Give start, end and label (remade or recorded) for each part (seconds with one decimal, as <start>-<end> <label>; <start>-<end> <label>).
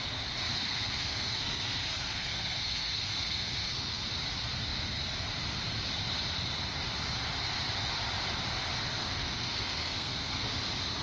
0.0-0.5 recorded; 0.5-4.0 remade; 4.0-9.0 recorded; 9.0-10.5 remade; 10.5-11.0 recorded